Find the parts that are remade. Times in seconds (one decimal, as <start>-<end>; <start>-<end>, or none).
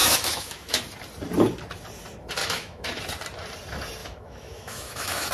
0.0-0.8; 2.4-3.0; 4.0-5.3